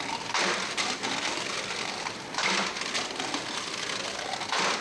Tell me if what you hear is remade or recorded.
recorded